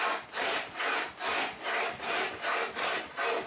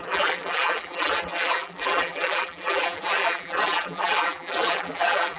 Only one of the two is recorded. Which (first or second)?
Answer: first